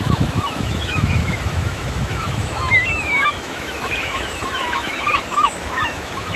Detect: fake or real fake